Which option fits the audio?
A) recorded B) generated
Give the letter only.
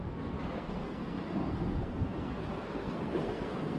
B